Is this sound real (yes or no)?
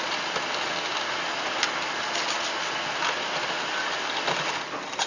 yes